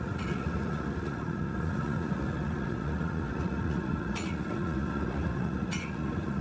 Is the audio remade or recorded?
remade